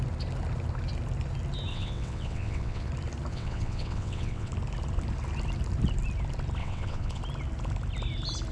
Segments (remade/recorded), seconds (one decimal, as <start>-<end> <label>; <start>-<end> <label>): 0.0-1.7 recorded; 1.7-2.9 remade; 2.9-3.3 recorded; 3.3-4.5 remade; 4.5-6.6 recorded; 6.6-7.2 remade; 7.2-8.5 recorded